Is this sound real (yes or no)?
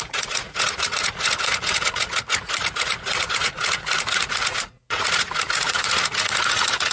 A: no